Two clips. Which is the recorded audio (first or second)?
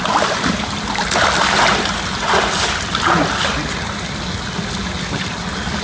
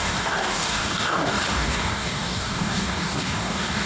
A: first